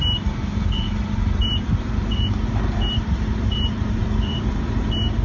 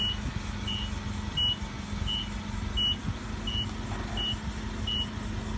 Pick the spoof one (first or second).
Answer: first